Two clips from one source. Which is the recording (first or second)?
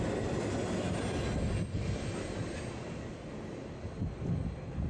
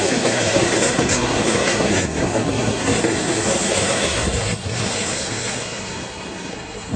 first